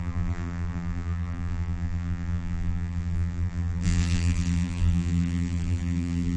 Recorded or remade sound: remade